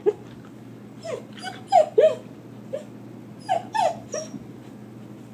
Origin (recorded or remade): recorded